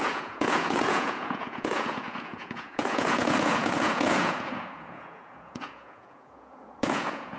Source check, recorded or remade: remade